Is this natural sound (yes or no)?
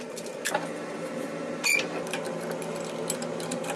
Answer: yes